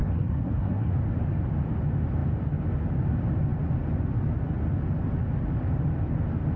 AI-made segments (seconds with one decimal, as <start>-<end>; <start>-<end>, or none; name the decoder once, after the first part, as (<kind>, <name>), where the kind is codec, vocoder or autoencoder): 0.0-0.9 (codec, SNAC)

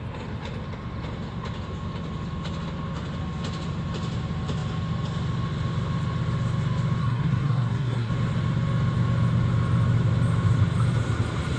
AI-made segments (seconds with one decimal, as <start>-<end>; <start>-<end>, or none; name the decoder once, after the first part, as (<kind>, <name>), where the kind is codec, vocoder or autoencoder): 7.0-8.1 (codec, SNAC)